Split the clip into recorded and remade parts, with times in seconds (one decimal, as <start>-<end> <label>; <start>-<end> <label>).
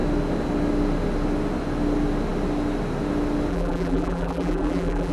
0.0-3.5 recorded; 3.5-5.1 remade